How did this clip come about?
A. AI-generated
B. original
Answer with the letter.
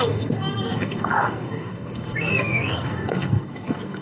A